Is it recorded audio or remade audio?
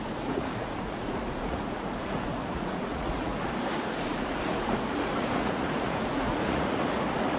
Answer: remade